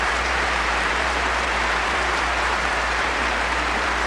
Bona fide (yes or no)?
no